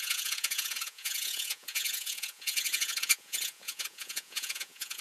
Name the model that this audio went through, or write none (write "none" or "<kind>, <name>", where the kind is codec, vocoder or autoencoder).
vocoder, Vocos